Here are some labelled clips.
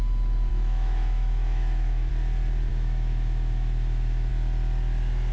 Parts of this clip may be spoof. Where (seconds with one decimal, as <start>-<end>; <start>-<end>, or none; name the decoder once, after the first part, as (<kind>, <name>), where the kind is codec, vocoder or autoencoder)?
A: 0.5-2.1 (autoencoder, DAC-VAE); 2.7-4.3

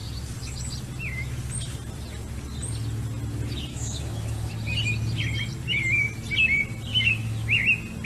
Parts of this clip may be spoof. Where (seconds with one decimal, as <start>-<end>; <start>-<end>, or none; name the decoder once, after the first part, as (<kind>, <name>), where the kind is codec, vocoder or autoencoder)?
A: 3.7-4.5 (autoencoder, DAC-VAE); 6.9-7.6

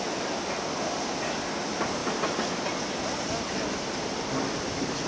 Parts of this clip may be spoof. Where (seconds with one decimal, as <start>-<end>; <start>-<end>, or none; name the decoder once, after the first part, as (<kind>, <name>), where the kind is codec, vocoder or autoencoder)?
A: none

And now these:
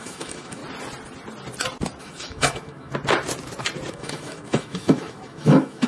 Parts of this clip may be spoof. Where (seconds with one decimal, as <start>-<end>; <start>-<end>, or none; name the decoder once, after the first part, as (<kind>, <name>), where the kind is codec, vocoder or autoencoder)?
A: 0.0-0.6 (autoencoder, DAC-VAE); 2.0-2.9; 3.9-5.9

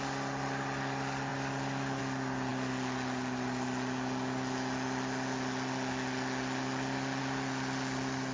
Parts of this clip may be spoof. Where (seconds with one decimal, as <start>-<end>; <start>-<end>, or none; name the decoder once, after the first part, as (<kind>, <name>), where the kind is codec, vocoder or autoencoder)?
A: none

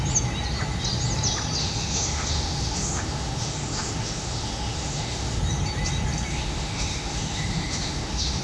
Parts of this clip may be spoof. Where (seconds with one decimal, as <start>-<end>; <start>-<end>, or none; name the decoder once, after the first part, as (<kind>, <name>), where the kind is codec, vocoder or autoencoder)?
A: 1.6-5.4 (autoencoder, DAC-VAE); 6.3-8.4

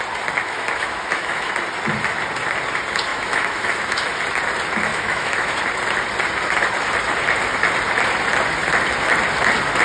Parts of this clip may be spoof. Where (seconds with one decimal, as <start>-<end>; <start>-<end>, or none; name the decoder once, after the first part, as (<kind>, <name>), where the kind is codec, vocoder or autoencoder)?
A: 0.4-1.5 (autoencoder, DAC-VAE); 3.1-4.2; 4.9-5.6

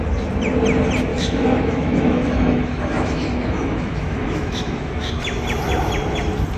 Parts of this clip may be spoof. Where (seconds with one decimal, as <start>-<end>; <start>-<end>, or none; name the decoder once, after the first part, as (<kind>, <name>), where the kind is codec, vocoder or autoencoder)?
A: 1.1-5.1 (autoencoder, DAC-VAE)